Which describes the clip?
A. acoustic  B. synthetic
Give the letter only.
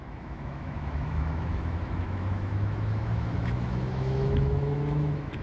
B